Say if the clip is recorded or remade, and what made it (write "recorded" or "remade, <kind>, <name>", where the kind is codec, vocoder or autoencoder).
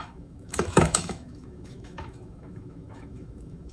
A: remade, autoencoder, DAC-VAE